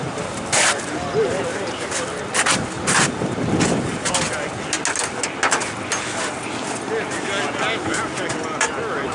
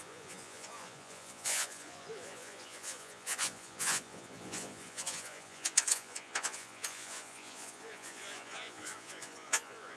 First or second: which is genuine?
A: first